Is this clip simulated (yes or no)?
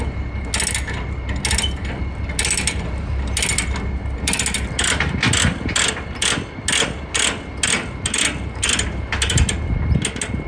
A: no